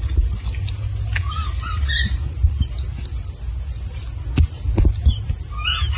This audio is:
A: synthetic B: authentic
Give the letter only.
B